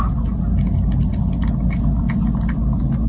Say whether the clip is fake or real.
real